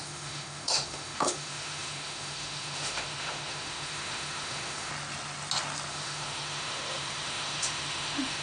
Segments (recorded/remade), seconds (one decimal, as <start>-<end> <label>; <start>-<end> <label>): 0.0-4.9 remade; 4.9-5.9 recorded; 5.9-8.4 remade